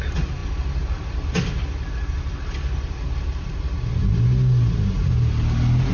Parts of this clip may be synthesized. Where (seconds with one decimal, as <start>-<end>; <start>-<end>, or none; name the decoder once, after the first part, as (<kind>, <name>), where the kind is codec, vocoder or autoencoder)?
none